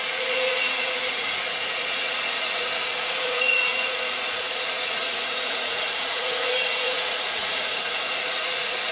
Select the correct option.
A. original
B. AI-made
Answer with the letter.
B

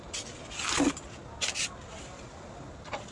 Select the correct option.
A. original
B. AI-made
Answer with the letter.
A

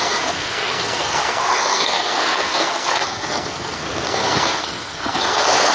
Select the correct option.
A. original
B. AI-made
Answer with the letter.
B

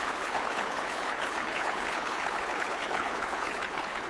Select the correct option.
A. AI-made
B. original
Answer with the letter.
A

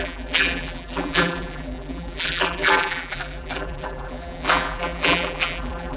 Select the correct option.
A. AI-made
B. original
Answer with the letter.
A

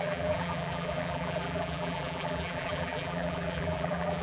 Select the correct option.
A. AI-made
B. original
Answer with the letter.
A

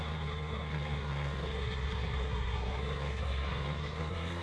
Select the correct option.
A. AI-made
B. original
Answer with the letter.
A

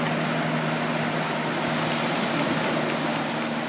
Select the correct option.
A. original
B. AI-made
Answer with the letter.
A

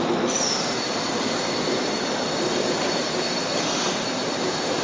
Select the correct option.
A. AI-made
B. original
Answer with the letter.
A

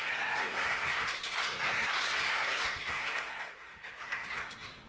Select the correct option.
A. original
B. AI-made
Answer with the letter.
B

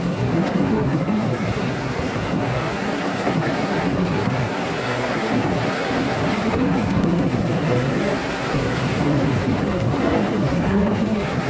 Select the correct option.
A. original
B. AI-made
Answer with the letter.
B